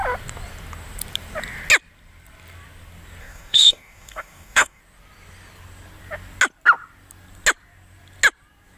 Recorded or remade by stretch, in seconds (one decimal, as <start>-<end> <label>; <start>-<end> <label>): 0.0-3.2 recorded; 3.2-4.8 remade; 4.8-8.8 recorded